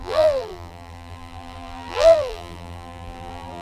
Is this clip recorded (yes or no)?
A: no